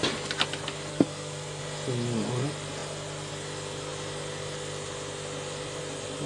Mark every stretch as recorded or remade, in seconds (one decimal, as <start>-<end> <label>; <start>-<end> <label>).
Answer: 0.0-0.9 recorded; 0.9-1.6 remade; 1.6-6.3 recorded

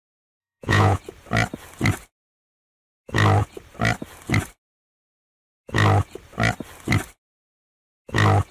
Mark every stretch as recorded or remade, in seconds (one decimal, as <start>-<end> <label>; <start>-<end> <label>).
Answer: 0.0-0.4 recorded; 0.4-1.0 remade; 1.0-8.5 recorded

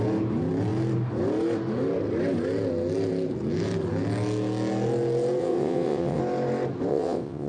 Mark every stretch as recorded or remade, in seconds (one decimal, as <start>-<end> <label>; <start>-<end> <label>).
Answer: 0.0-5.4 recorded; 5.4-6.2 remade; 6.2-6.9 recorded; 6.9-7.5 remade

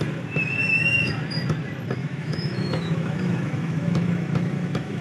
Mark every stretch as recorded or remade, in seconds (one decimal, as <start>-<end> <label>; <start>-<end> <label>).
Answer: 0.0-0.6 recorded; 0.6-1.2 remade; 1.2-2.0 recorded; 2.0-5.0 remade

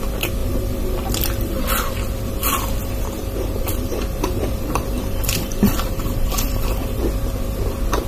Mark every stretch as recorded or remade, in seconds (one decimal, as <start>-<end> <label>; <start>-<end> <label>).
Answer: 0.0-0.4 recorded; 0.4-1.9 remade; 1.9-2.8 recorded; 2.8-7.0 remade; 7.0-8.1 recorded

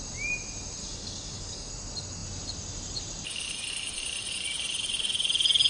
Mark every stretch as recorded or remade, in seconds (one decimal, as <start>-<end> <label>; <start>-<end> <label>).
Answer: 0.0-0.8 recorded; 0.8-1.7 remade; 1.7-5.7 recorded